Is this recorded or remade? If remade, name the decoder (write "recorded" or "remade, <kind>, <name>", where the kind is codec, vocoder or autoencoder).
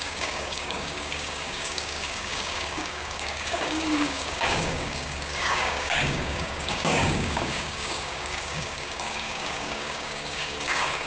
remade, codec, DAC